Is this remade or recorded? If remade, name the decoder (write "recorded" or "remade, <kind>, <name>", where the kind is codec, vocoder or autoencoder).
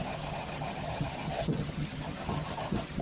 remade, vocoder, HiFi-GAN